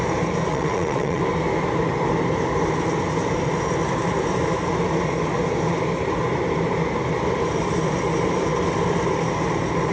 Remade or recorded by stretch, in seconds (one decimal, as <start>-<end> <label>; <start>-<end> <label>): 0.0-0.5 recorded; 0.5-1.2 remade; 1.2-9.9 recorded